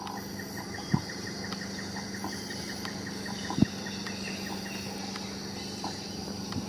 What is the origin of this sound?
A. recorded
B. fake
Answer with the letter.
A